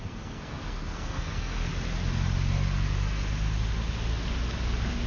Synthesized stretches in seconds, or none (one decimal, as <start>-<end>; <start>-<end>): 0.0-1.7